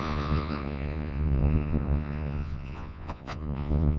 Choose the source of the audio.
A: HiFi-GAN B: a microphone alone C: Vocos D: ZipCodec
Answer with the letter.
C